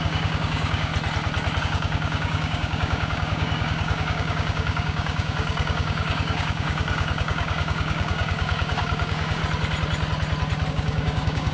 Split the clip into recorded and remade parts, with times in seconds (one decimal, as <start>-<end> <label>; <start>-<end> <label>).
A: 0.0-0.9 remade; 0.9-1.6 recorded; 1.6-9.4 remade; 9.4-10.7 recorded; 10.7-11.5 remade